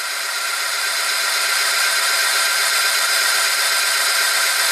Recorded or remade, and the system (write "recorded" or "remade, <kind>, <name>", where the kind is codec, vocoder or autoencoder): recorded